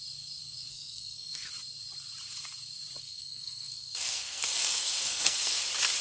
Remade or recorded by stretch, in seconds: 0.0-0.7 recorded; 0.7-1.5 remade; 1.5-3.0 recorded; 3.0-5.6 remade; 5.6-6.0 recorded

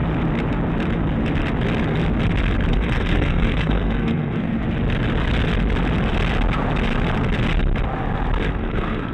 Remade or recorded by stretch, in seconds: 0.0-2.7 recorded; 2.7-4.6 remade; 4.6-8.5 recorded; 8.5-9.1 remade

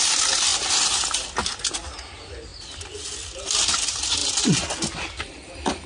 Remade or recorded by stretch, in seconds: 0.0-5.9 recorded

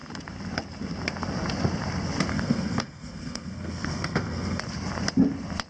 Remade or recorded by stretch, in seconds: 0.0-2.3 recorded; 2.3-4.6 remade; 4.6-5.7 recorded

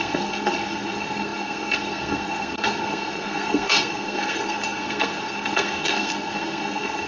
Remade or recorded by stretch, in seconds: 0.0-7.1 remade

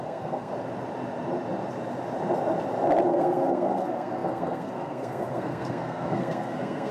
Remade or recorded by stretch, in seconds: 0.0-0.5 remade; 0.5-3.1 recorded; 3.1-6.9 remade

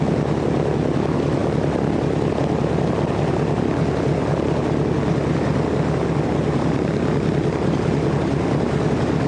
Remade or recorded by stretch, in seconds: 0.0-9.3 recorded

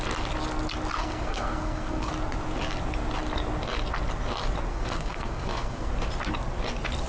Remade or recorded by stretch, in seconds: 0.0-1.0 recorded; 1.0-2.1 remade; 2.1-4.7 recorded; 4.7-5.9 remade; 5.9-7.1 recorded